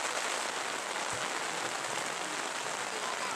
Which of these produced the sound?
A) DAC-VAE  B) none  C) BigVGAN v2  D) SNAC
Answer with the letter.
B